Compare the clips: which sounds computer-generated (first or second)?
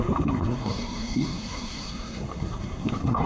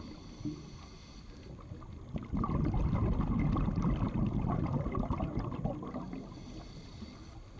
first